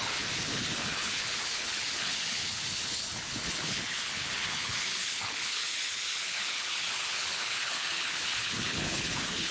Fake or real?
fake